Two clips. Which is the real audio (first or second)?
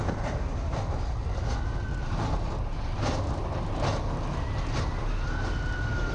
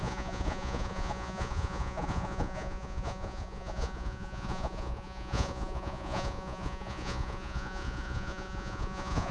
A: first